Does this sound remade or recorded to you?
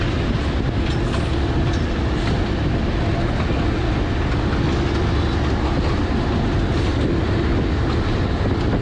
recorded